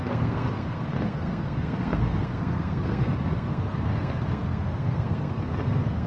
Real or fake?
fake